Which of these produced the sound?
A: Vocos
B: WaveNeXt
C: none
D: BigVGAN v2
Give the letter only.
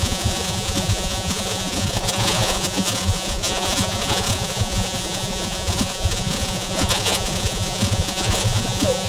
A